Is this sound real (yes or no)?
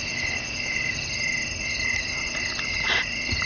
yes